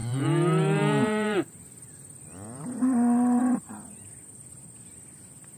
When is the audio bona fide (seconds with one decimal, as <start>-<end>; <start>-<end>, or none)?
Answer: 3.4-5.6